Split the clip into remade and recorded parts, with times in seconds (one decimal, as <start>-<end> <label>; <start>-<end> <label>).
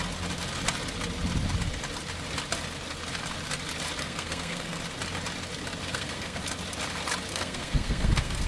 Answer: 0.0-4.0 recorded; 4.0-4.8 remade; 4.8-5.9 recorded; 5.9-6.4 remade; 6.4-7.3 recorded; 7.3-8.5 remade